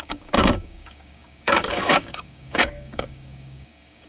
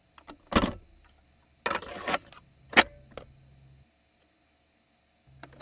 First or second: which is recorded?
second